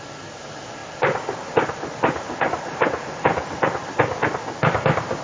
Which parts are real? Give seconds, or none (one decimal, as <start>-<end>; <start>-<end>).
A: 0.0-0.8; 3.9-5.2